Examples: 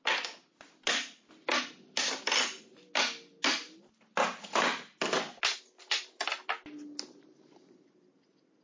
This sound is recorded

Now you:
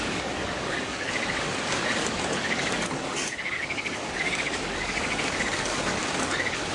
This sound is remade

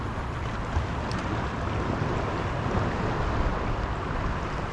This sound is recorded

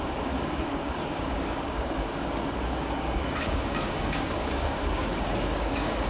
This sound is remade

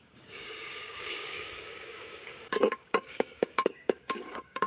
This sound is remade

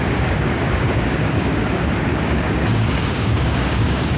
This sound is remade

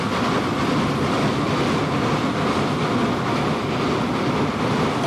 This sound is recorded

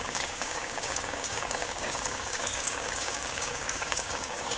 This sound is remade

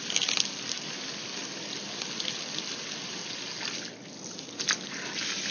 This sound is recorded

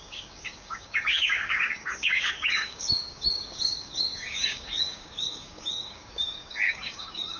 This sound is remade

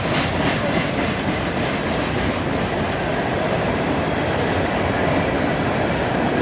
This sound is recorded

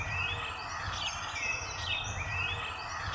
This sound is recorded